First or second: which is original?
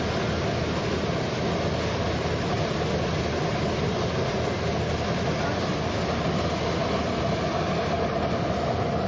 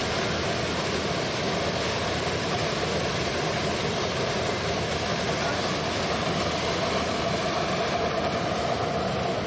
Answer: first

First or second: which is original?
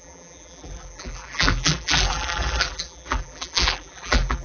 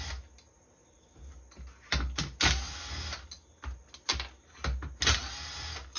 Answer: second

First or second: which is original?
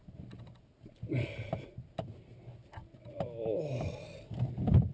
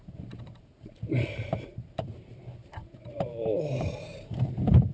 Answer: first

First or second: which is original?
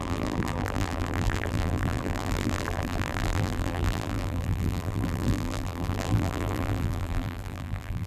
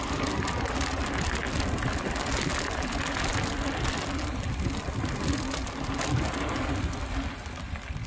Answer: second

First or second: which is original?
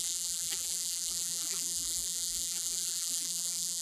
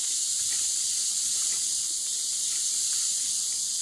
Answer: second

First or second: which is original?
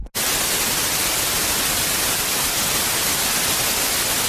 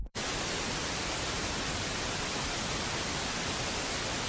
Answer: first